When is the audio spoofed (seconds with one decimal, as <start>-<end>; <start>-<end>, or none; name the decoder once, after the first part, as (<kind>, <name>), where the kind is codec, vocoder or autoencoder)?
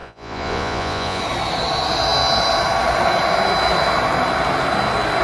0.0-1.2 (vocoder, Vocos)